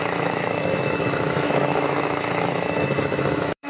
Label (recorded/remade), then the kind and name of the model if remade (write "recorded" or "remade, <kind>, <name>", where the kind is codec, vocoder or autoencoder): remade, autoencoder, DAC-VAE